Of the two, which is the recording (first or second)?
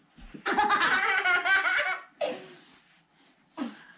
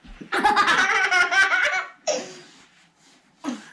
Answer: first